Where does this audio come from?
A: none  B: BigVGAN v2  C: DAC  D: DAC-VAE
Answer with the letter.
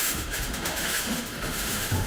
D